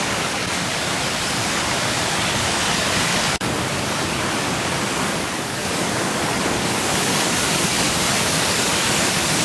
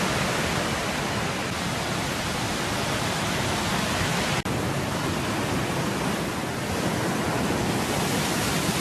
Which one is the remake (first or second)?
first